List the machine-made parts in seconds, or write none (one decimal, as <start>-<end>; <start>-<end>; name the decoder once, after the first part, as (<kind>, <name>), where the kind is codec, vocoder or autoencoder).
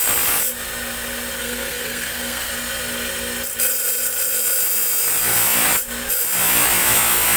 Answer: 1.4-2.5 (codec, SNAC)